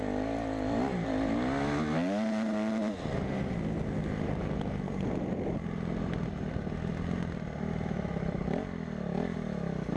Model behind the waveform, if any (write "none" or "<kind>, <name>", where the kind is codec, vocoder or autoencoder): none